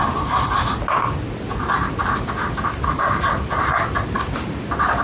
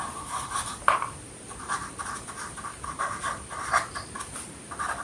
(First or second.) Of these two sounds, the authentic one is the first